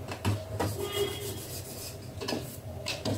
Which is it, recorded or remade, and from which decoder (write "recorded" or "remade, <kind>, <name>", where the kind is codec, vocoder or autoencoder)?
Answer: recorded